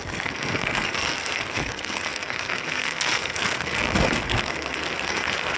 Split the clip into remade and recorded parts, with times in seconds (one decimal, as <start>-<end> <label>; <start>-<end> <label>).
0.0-5.6 remade